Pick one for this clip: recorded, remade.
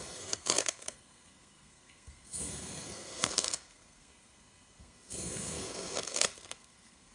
remade